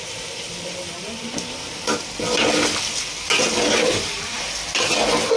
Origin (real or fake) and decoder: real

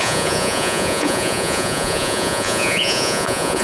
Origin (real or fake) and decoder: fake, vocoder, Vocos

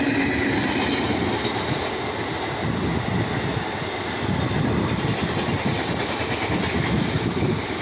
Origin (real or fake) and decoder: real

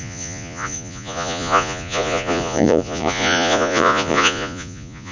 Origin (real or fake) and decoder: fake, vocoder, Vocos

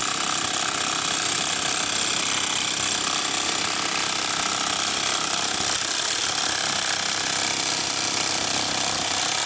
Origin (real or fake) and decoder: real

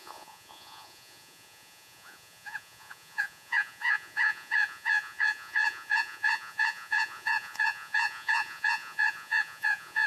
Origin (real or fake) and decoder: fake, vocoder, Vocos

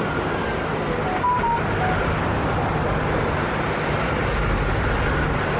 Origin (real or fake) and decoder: real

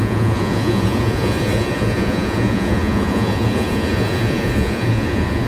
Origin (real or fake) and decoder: fake, vocoder, Vocos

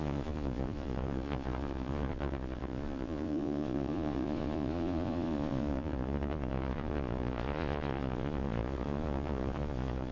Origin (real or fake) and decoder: fake, vocoder, Vocos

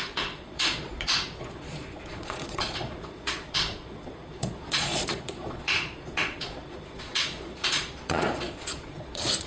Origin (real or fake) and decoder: fake, vocoder, Vocos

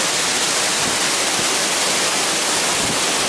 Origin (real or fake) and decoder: real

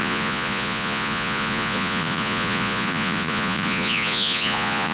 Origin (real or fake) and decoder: fake, vocoder, Vocos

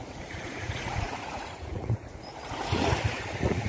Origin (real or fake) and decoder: fake, vocoder, Vocos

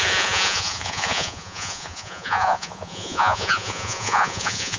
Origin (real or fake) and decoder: fake, vocoder, Vocos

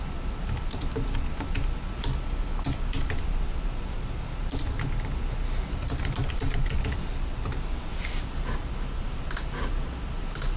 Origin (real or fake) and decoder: real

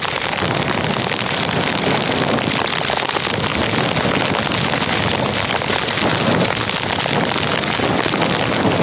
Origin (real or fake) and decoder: real